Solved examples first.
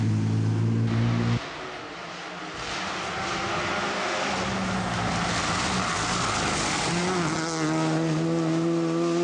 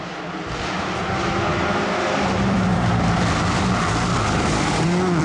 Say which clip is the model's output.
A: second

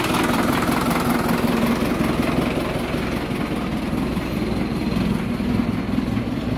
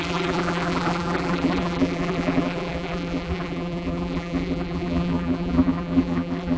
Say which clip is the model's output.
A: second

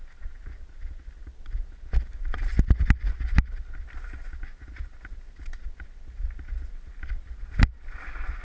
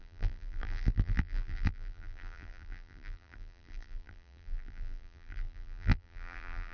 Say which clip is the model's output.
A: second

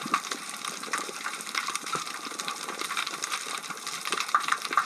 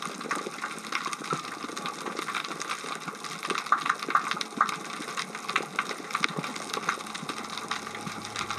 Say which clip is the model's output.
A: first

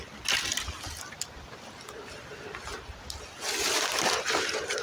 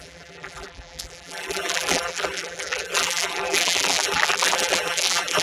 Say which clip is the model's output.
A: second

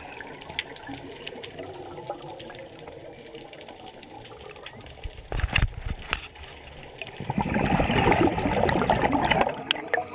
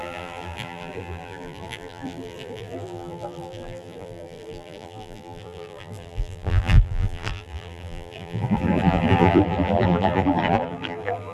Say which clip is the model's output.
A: second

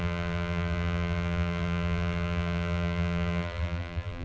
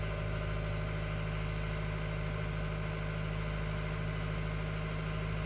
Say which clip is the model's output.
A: first